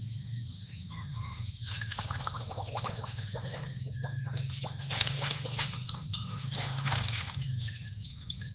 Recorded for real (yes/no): no